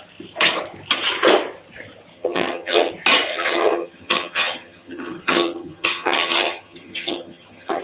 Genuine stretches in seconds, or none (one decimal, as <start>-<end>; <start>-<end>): 0.0-2.1; 2.9-3.3